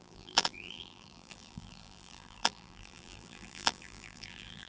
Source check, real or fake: fake